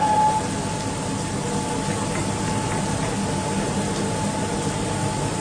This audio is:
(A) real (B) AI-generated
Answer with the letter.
A